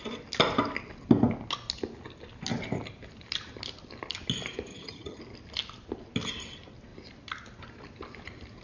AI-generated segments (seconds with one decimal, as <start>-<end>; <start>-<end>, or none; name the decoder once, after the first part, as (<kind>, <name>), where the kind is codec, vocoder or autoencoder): 4.7-5.2 (vocoder, HiFi-GAN)